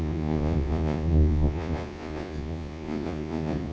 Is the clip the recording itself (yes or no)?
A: no